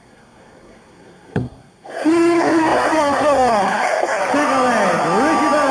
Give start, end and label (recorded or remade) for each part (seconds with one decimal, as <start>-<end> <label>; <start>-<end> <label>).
0.0-4.2 remade; 4.2-5.7 recorded